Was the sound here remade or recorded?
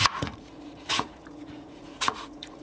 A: remade